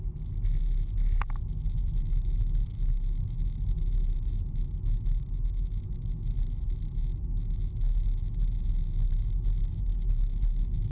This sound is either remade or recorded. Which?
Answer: recorded